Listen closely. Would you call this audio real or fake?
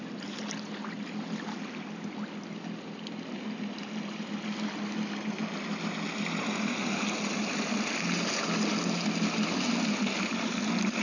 real